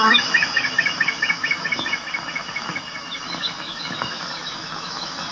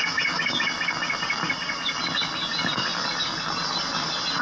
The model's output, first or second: first